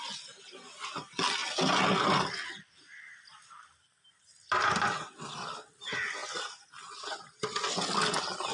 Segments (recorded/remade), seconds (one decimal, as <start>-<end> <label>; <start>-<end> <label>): 0.0-8.5 recorded